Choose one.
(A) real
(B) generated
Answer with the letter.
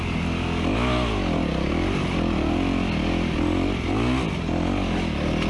A